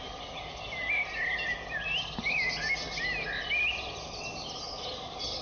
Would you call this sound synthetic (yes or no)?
no